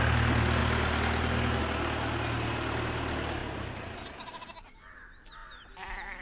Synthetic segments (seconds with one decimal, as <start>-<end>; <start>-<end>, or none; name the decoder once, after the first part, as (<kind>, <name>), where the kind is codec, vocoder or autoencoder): none